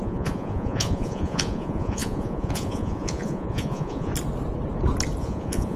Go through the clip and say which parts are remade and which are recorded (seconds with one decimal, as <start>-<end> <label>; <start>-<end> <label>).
0.0-4.1 remade; 4.1-5.2 recorded; 5.2-5.8 remade